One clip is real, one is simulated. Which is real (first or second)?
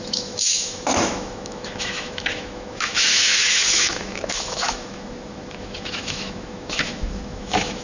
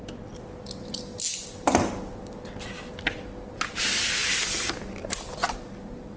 second